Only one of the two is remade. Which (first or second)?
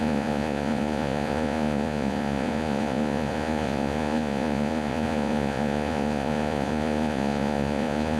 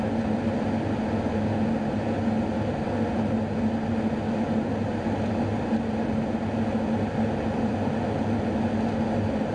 first